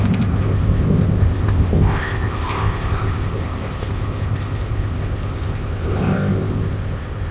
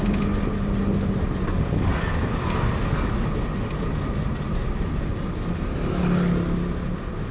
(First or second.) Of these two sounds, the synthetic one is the first